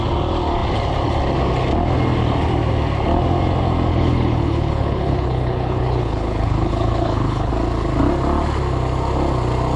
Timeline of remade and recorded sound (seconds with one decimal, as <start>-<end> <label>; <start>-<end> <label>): 0.0-3.9 recorded; 3.9-7.5 remade; 7.5-9.8 recorded